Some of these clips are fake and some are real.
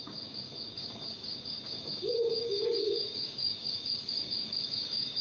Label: fake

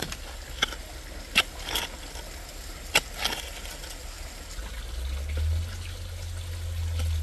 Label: real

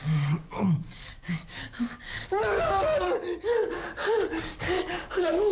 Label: fake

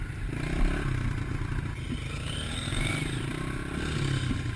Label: real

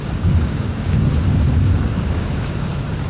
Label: fake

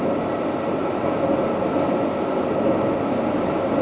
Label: real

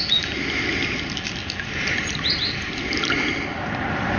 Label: real